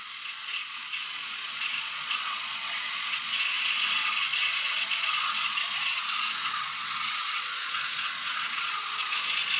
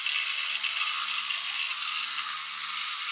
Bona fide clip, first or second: second